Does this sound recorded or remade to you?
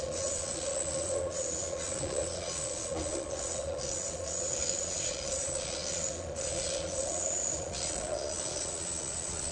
remade